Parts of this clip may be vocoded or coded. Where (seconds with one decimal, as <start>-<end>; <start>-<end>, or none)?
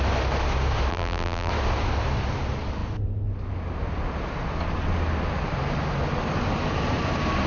0.9-1.5